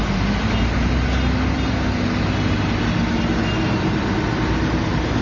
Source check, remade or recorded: recorded